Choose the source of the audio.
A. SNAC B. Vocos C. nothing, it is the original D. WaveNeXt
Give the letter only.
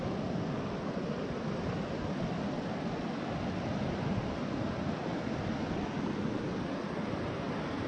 C